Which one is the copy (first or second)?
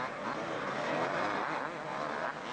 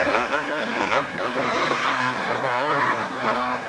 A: second